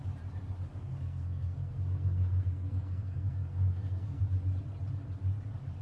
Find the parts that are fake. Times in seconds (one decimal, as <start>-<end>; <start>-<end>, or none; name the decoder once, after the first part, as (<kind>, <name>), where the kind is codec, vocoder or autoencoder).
0.7-4.2 (codec, SNAC)